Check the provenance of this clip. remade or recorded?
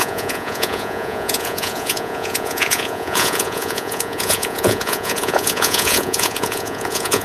remade